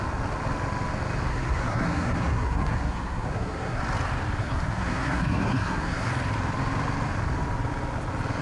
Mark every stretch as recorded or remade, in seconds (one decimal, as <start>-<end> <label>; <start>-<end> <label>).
0.0-1.3 recorded; 1.3-3.8 remade; 3.8-4.4 recorded; 4.4-6.1 remade; 6.1-8.4 recorded